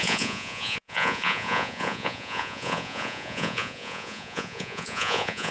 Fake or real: fake